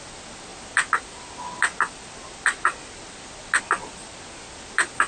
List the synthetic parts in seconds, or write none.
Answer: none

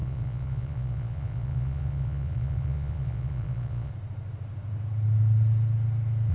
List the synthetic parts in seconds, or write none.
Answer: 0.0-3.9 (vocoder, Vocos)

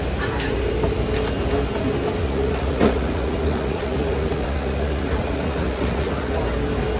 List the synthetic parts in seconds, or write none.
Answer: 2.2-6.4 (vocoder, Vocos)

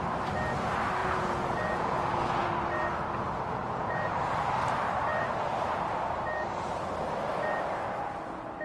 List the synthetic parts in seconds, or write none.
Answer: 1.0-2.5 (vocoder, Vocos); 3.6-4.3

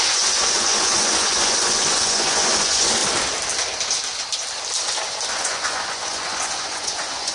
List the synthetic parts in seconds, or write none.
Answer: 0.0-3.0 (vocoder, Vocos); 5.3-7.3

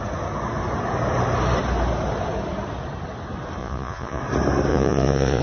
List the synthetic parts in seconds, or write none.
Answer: 3.6-4.2 (vocoder, Vocos); 4.7-5.4